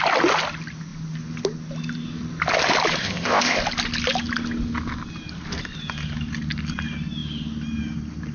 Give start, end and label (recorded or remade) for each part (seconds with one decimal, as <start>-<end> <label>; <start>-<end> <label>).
0.0-3.0 recorded; 3.0-3.6 remade; 3.6-8.3 recorded